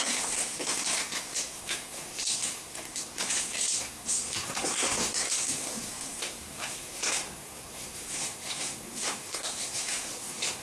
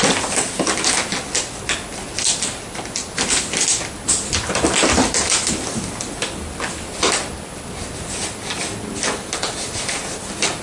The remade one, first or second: first